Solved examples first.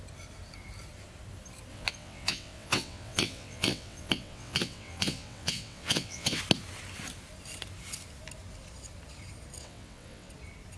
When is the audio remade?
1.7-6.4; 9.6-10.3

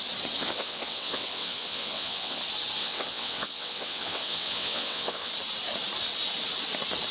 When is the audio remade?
0.4-2.4; 2.8-5.3